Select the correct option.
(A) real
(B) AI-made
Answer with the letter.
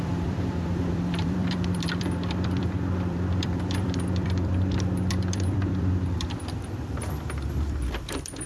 B